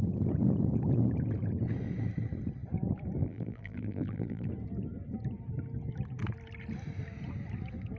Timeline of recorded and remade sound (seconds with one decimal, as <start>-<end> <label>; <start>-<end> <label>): 0.0-3.2 recorded; 3.2-4.5 remade; 4.5-8.0 recorded